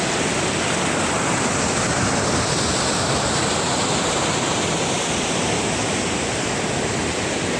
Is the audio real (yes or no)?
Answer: yes